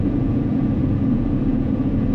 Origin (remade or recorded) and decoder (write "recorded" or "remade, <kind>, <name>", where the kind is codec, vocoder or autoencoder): remade, vocoder, Vocos